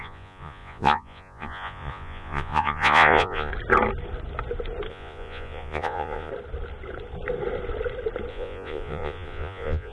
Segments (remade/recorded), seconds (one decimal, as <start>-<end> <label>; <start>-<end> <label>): 0.0-3.5 remade; 3.5-4.9 recorded; 4.9-6.3 remade; 6.3-8.3 recorded; 8.3-9.9 remade